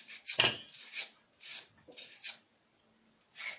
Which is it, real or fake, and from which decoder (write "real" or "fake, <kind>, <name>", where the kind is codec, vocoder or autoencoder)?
real